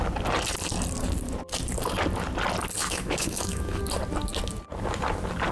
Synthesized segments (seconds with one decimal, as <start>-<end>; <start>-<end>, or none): 2.8-3.8